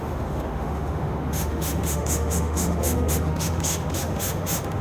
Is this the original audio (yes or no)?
no